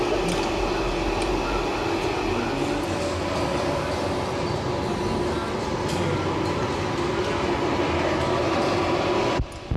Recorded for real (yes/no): yes